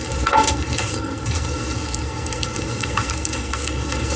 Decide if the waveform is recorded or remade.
remade